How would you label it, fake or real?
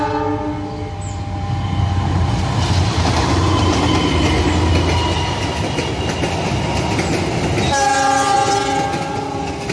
real